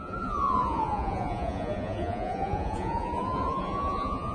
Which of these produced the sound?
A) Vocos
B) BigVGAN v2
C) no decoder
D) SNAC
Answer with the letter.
A